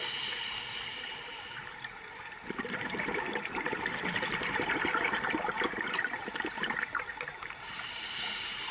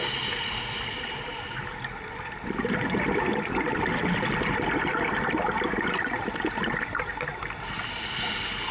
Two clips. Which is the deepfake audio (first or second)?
first